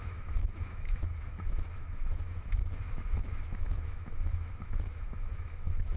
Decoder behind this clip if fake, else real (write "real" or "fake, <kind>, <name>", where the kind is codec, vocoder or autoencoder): fake, autoencoder, DAC-VAE